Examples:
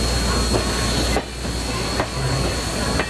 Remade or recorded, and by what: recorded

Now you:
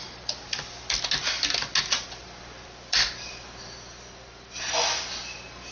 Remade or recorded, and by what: recorded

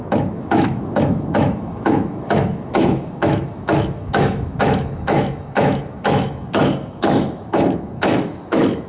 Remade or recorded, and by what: remade, autoencoder, DAC-VAE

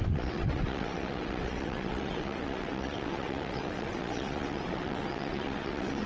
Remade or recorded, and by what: remade, vocoder, WaveNeXt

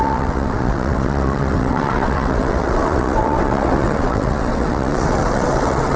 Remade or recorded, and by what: remade, vocoder, WaveNeXt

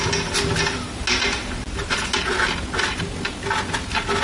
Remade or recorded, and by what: recorded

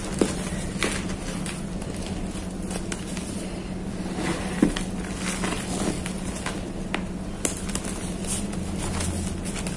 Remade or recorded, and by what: recorded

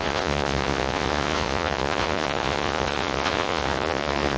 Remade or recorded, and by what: remade, vocoder, Vocos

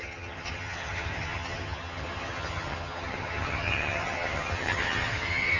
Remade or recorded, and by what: remade, vocoder, HiFi-GAN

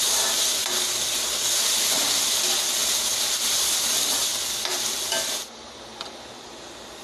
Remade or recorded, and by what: remade, vocoder, BigVGAN v2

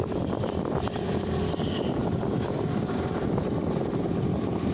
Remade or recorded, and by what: remade, vocoder, BigVGAN v2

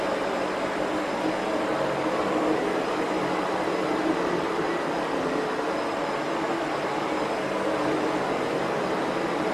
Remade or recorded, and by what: recorded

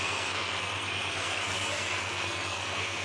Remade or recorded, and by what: remade, codec, SNAC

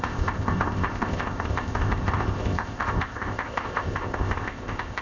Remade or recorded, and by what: remade, codec, ZipCodec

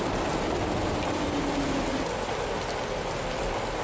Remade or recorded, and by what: recorded